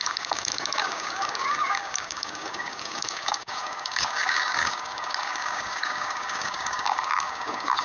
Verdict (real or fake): fake